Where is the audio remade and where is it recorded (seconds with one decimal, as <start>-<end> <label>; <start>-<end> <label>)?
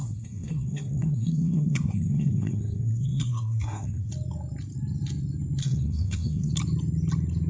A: 0.0-4.1 remade; 4.1-5.6 recorded; 5.6-6.5 remade; 6.5-7.5 recorded